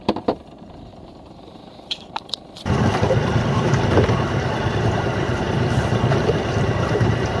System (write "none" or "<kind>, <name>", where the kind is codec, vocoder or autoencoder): vocoder, BigVGAN v2